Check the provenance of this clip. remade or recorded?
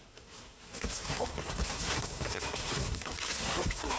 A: remade